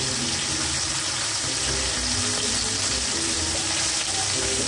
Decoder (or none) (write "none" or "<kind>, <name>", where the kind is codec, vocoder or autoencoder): none